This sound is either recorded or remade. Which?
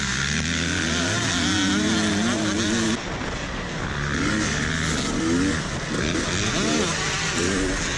recorded